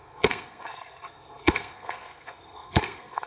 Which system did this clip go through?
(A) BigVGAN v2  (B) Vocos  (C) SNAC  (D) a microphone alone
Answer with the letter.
C